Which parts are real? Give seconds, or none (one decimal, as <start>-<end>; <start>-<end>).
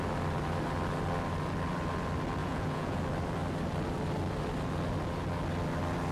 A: 0.0-2.4; 3.0-6.1